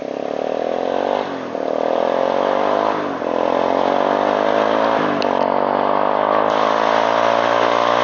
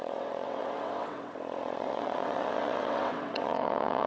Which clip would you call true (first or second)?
first